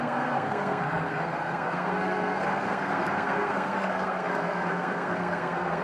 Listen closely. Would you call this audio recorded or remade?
remade